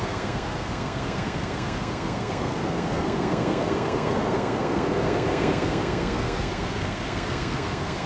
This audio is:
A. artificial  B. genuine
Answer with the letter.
A